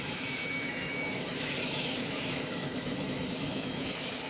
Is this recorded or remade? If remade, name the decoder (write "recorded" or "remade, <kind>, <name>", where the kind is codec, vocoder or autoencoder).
remade, autoencoder, DAC-VAE